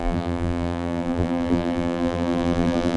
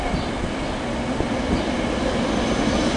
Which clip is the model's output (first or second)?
first